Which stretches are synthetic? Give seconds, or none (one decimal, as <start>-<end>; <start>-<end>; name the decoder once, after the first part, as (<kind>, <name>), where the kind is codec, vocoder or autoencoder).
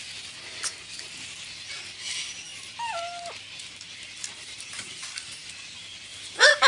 2.5-5.1 (vocoder, BigVGAN v2); 6.1-6.7